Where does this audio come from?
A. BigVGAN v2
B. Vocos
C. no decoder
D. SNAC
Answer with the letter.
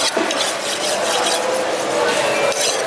C